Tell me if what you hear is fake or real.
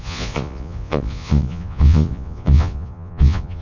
fake